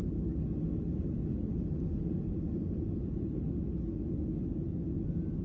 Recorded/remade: recorded